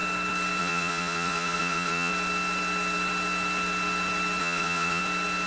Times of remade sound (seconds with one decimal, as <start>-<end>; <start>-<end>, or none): 0.6-2.1; 4.4-5.0